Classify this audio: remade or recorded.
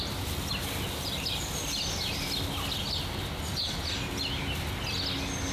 recorded